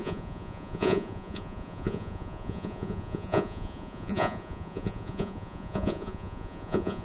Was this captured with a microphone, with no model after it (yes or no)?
no